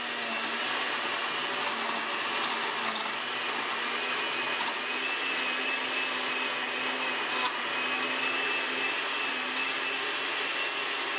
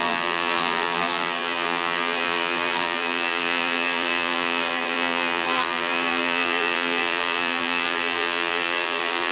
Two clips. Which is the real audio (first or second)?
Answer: first